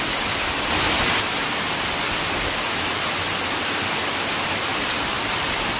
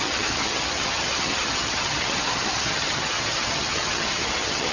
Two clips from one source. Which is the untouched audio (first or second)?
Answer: first